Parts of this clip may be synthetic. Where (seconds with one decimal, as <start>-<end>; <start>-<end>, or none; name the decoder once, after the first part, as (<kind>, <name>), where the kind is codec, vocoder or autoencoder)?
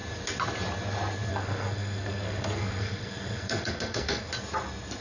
1.3-4.3 (codec, SNAC)